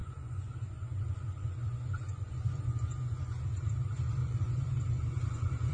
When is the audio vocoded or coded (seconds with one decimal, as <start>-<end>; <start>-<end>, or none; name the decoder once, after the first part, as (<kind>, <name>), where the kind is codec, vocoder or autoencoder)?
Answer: 0.0-3.4 (vocoder, Vocos); 4.2-5.7